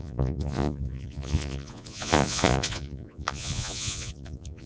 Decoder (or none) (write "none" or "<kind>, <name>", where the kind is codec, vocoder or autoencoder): vocoder, Vocos